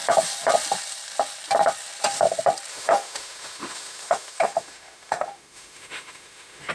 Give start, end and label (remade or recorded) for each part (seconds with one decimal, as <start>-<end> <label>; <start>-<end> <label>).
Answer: 0.0-2.7 recorded; 2.7-6.7 remade